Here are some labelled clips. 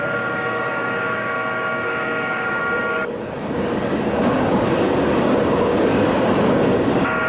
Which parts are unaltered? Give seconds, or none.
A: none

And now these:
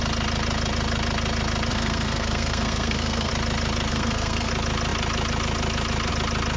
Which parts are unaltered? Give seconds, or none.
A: 0.0-1.7; 3.3-3.9; 4.5-6.6

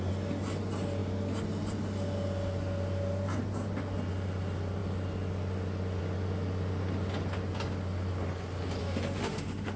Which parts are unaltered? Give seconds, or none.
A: 0.0-8.8

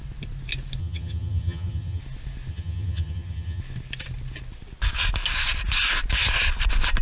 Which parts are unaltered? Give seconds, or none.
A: 0.0-0.8; 2.0-2.5; 3.6-7.0

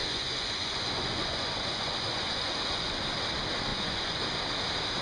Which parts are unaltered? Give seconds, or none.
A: 3.0-3.7; 4.2-5.0

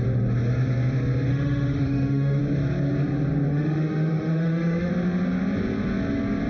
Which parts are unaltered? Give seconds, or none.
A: 0.0-1.3; 2.4-3.5; 4.9-6.5